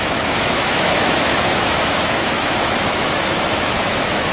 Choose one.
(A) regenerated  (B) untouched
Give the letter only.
A